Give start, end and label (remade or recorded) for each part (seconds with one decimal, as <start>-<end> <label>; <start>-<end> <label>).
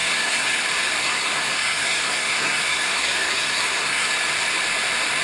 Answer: 0.0-0.6 remade; 0.6-1.0 recorded; 1.0-4.1 remade; 4.1-5.2 recorded